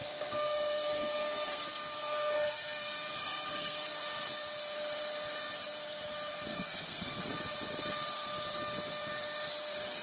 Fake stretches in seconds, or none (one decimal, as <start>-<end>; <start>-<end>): 0.0-4.0; 6.5-7.2